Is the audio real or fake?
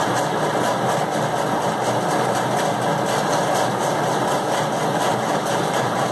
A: real